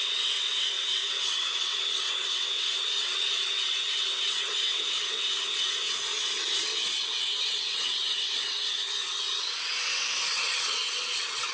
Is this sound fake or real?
fake